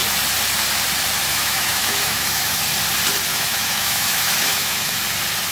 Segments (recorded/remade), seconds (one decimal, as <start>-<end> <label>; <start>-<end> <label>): 0.0-1.3 recorded; 1.3-2.6 remade; 2.6-3.3 recorded; 3.3-5.0 remade; 5.0-5.5 recorded